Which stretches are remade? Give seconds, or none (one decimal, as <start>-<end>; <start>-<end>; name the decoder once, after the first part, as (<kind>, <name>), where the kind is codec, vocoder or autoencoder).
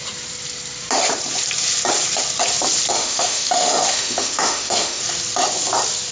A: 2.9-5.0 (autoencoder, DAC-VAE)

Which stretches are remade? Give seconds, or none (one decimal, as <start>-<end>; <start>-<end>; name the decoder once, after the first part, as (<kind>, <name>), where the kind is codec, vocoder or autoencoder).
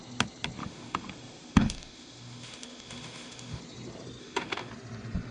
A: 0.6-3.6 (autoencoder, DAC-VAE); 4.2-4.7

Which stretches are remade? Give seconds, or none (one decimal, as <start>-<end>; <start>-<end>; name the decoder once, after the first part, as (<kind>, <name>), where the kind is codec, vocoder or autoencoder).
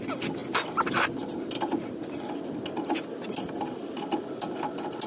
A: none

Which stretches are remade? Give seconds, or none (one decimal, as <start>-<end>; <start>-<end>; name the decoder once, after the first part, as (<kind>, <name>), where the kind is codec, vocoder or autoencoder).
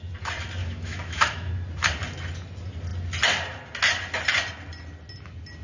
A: 0.6-1.5 (autoencoder, DAC-VAE)